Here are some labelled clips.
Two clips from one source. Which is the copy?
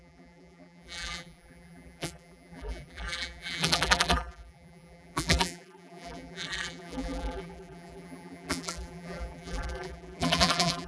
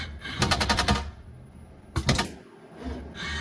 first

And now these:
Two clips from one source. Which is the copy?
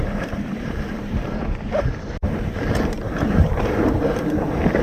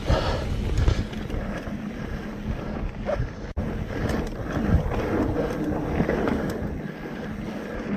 first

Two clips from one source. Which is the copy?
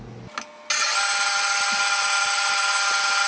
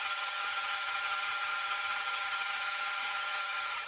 second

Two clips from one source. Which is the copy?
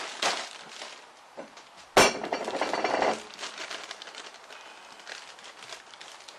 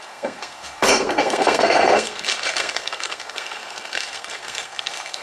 second